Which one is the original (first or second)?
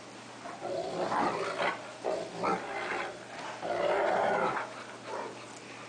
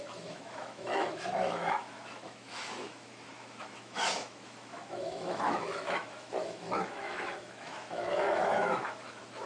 first